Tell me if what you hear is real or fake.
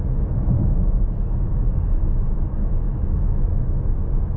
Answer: fake